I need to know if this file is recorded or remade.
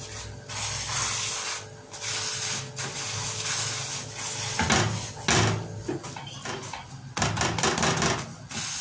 recorded